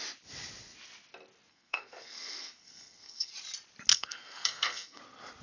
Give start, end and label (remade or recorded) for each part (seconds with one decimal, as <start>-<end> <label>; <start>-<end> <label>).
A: 0.0-1.5 recorded; 1.5-3.3 remade; 3.3-3.9 recorded; 3.9-5.0 remade; 5.0-5.4 recorded